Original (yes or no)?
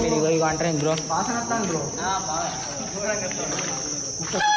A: yes